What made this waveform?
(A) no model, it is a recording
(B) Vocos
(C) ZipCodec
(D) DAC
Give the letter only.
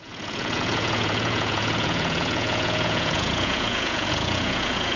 B